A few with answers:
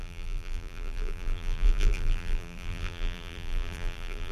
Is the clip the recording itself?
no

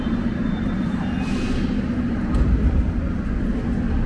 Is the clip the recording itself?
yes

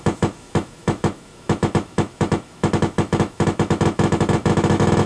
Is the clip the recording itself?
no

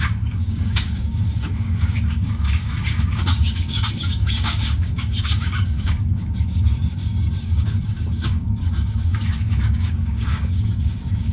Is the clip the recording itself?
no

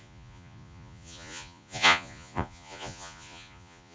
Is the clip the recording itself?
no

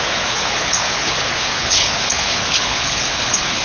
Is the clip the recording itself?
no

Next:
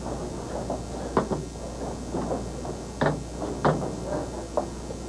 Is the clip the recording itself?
yes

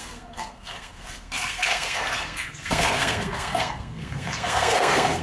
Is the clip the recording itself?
no